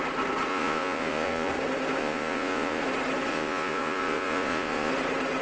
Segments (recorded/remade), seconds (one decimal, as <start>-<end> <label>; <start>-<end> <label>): 0.0-0.5 recorded; 0.5-1.5 remade; 1.5-2.0 recorded; 2.0-2.8 remade; 2.8-3.3 recorded; 3.3-4.9 remade; 4.9-5.4 recorded